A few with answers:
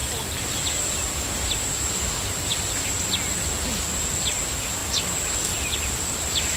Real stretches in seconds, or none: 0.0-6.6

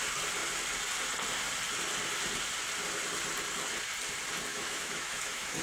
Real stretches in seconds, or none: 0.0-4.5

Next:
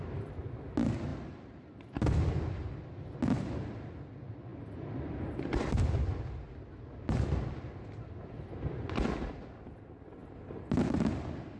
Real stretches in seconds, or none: 0.0-11.6

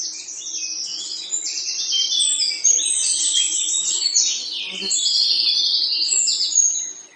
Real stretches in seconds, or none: 0.0-7.2